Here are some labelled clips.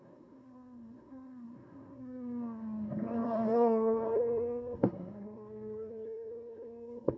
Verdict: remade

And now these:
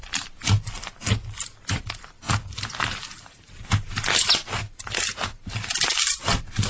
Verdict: recorded